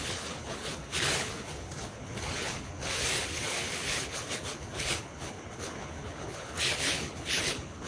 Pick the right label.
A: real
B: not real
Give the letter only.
B